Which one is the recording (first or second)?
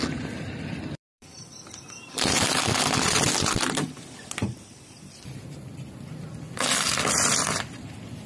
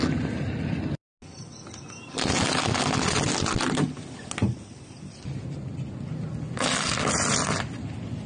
second